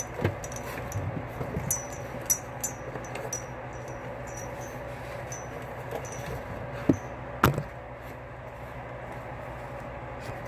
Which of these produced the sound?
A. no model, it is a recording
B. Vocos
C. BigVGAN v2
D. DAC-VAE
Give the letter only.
A